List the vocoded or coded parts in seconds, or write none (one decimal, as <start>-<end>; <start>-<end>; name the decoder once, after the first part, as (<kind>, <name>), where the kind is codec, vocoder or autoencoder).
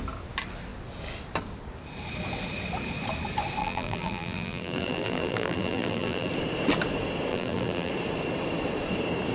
3.6-6.3 (vocoder, BigVGAN v2); 7.3-7.9